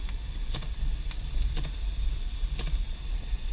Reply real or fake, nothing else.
real